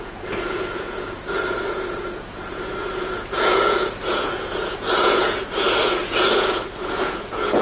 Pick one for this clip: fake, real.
fake